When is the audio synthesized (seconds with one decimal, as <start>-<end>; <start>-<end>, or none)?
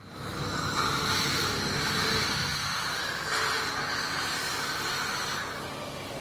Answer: none